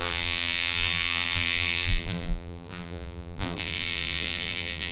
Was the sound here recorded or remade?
remade